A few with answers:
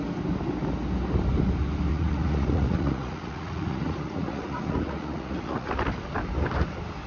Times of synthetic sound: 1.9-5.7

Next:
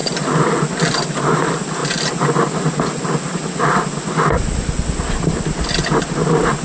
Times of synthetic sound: none

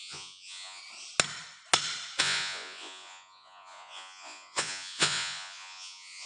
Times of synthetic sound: 0.0-0.8; 2.2-6.3

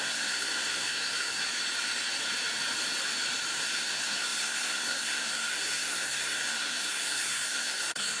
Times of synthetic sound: 0.0-1.4; 3.6-8.2

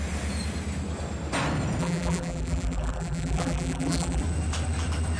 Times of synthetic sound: 1.8-4.2

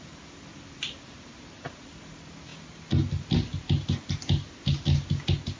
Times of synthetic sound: none